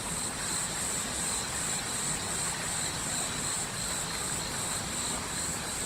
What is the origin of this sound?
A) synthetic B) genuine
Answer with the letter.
B